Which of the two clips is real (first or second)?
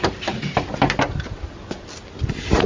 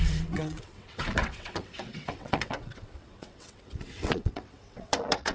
first